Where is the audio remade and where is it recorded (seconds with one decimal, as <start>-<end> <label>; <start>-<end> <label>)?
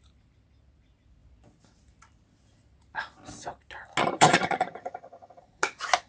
0.0-4.0 recorded; 4.0-5.4 remade; 5.4-6.1 recorded